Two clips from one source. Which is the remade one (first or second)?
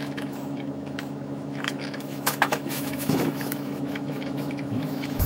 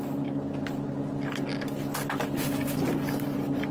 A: first